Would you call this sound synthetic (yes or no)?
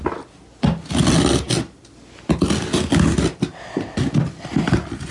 no